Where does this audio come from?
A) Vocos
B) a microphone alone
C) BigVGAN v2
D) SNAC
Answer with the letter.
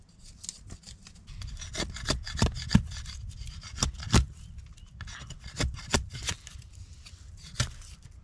B